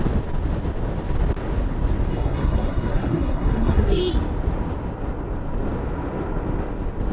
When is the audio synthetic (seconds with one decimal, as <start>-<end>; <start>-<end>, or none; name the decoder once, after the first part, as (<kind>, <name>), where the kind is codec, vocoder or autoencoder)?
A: 2.1-4.0 (codec, SNAC)